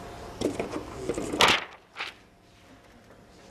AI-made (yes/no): no